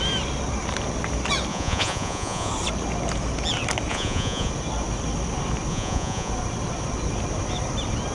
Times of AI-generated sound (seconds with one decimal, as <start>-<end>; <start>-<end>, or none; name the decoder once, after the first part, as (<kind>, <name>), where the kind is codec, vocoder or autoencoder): 1.5-2.5 (vocoder, Vocos); 3.9-4.5; 5.7-6.3